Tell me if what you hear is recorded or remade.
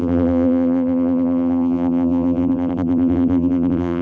remade